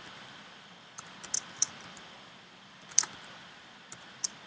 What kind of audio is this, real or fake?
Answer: fake